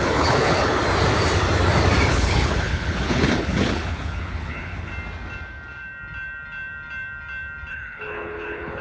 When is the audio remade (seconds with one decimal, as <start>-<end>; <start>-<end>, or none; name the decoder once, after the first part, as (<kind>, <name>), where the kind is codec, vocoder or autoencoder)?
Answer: 0.0-0.8 (codec, HILCodec); 2.1-4.9; 7.7-8.8